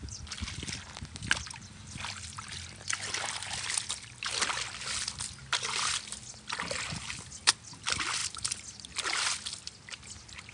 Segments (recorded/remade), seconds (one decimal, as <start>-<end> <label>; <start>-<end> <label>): 0.0-10.5 recorded